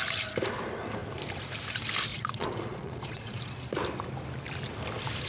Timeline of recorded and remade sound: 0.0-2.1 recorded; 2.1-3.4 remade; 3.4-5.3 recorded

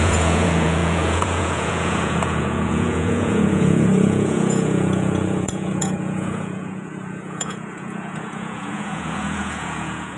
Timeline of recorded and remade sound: 0.0-10.2 remade

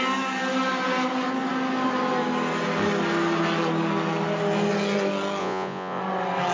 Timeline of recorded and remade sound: 0.0-5.4 recorded; 5.4-6.0 remade; 6.0-6.5 recorded

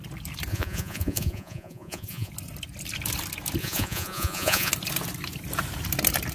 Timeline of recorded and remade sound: 0.0-0.5 recorded; 0.5-2.3 remade; 2.3-3.6 recorded; 3.6-4.7 remade; 4.7-6.3 recorded